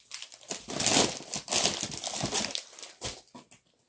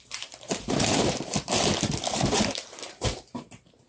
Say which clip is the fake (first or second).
second